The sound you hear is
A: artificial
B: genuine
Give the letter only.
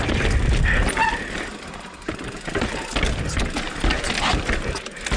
B